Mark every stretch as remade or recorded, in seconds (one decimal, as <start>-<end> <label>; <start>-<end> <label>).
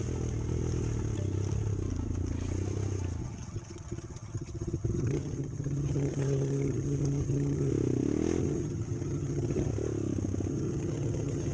0.0-3.2 recorded; 3.2-7.7 remade; 7.7-8.4 recorded; 8.4-9.7 remade; 9.7-10.5 recorded; 10.5-11.5 remade